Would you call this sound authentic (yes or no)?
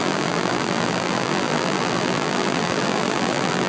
no